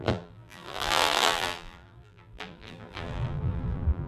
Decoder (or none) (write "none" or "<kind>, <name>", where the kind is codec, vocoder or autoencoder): vocoder, BigVGAN v2